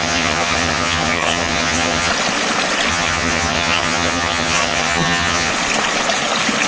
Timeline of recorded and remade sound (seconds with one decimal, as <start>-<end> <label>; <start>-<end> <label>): 0.0-2.1 remade; 2.1-2.9 recorded; 2.9-5.5 remade; 5.5-6.7 recorded